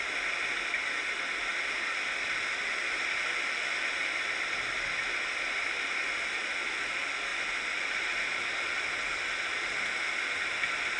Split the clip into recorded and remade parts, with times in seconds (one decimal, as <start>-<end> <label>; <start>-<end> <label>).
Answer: 0.0-11.0 recorded